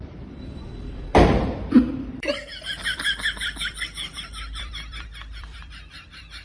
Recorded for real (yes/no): no